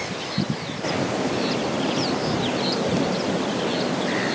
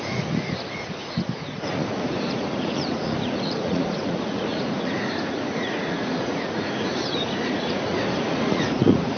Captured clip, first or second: first